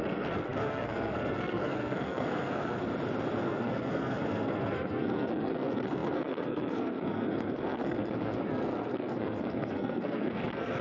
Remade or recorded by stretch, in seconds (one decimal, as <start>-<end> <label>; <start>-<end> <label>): 0.0-2.9 remade; 2.9-3.4 recorded; 3.4-10.8 remade